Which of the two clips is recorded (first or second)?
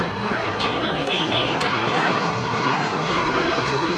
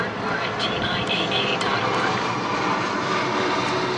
second